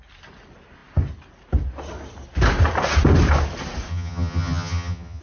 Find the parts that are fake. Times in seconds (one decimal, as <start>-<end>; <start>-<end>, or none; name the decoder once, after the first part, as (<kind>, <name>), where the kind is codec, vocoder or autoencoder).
3.9-5.2 (vocoder, HiFi-GAN)